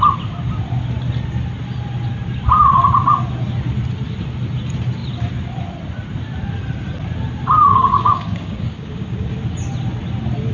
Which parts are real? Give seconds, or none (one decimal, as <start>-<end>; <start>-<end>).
0.0-7.7; 9.3-10.5